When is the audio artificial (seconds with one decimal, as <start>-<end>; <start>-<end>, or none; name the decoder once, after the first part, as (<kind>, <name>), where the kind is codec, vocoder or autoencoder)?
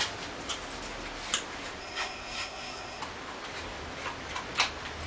1.8-3.0 (codec, SNAC)